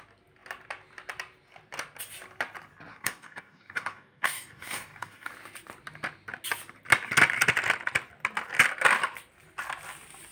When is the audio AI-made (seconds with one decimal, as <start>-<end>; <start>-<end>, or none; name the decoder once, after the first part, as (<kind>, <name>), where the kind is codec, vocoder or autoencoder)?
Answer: 2.9-5.3 (codec, DAC)